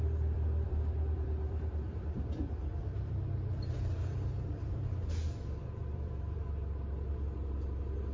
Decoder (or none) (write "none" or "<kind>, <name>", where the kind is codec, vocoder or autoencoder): vocoder, BigVGAN v2